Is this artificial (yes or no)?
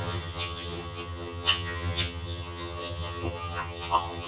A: yes